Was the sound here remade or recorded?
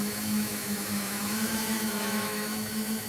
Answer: remade